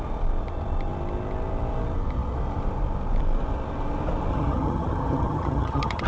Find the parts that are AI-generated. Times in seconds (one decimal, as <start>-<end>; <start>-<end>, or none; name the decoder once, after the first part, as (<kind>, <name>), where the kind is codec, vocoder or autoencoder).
4.3-6.1 (vocoder, HiFi-GAN)